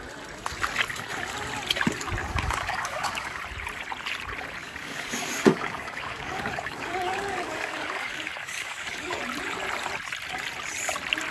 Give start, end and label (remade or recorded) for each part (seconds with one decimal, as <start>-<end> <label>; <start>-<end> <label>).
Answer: 0.0-2.2 recorded; 2.2-3.4 remade; 3.4-4.6 recorded; 4.6-9.2 remade; 9.2-11.3 recorded